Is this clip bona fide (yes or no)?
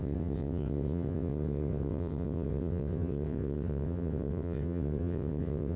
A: no